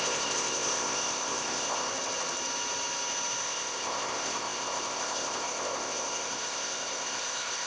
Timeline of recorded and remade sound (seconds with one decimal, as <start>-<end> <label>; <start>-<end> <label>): 0.0-1.9 remade; 1.9-3.4 recorded; 3.4-7.7 remade